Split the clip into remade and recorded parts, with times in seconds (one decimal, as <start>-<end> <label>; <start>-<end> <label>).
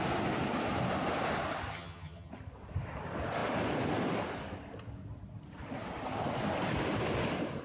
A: 0.0-1.7 recorded; 1.7-2.3 remade; 2.3-7.6 recorded